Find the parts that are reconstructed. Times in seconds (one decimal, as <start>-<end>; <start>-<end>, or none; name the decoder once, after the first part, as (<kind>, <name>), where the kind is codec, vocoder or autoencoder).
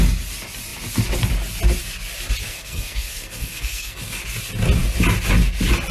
2.4-4.2 (codec, SNAC)